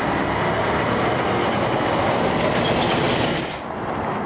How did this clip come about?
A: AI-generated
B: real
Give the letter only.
B